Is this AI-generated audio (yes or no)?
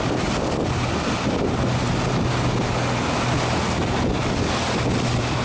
no